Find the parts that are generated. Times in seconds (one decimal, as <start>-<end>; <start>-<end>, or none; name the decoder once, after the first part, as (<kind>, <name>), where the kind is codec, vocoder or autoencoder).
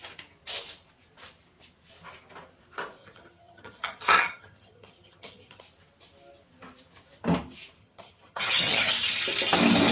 3.0-5.6 (vocoder, HiFi-GAN); 7.8-8.9